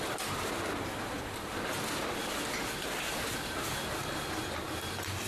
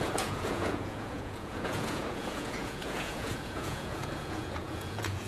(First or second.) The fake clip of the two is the second